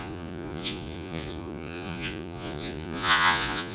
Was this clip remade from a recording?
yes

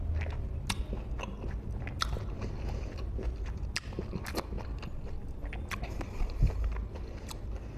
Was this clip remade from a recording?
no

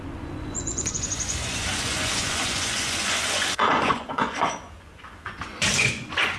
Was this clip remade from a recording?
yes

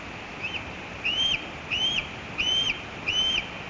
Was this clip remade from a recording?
no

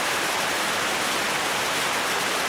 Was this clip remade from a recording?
no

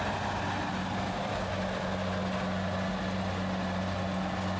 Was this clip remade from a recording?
no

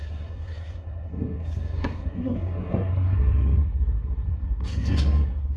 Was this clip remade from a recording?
yes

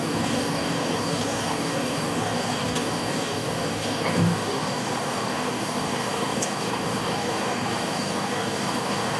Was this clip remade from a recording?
yes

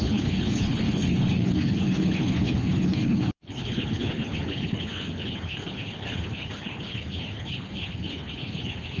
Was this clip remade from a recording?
yes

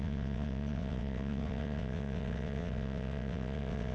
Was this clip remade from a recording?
yes